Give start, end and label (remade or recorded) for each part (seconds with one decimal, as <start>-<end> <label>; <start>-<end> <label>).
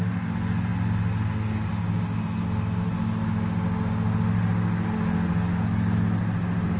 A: 0.0-6.8 recorded